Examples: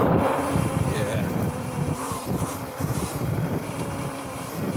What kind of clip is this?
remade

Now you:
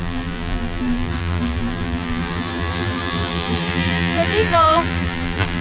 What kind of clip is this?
remade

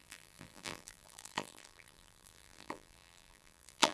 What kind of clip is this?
remade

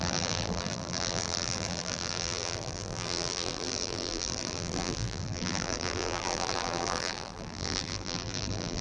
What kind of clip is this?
remade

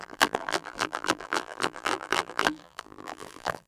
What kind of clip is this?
remade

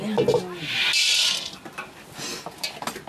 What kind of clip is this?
recorded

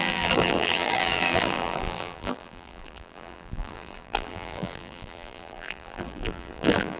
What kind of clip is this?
remade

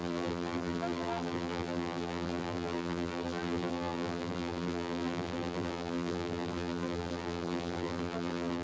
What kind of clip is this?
remade